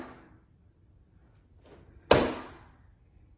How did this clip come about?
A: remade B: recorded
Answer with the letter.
B